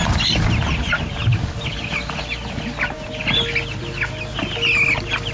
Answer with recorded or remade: recorded